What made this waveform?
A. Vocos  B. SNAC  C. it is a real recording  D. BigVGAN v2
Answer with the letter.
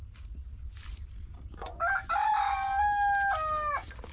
C